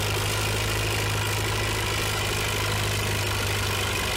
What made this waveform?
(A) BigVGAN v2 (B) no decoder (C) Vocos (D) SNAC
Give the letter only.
B